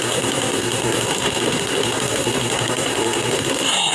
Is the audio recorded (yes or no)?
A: no